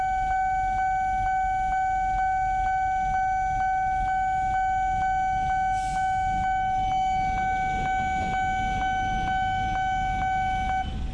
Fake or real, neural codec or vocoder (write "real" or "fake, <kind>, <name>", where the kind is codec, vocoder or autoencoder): real